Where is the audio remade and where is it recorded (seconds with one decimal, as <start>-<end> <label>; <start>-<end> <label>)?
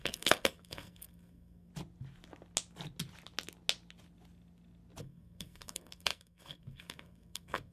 0.0-1.7 remade; 1.7-5.0 recorded; 5.0-7.7 remade